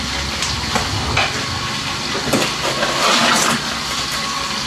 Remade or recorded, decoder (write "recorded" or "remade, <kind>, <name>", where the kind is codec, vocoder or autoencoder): recorded